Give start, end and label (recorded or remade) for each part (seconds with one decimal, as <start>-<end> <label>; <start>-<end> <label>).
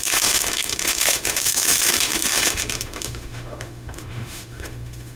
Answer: 0.0-5.2 remade